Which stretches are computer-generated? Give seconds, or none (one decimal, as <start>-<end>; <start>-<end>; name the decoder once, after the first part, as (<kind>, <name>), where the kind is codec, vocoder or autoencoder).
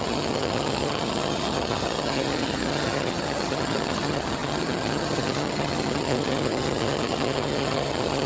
0.0-8.3 (vocoder, HiFi-GAN)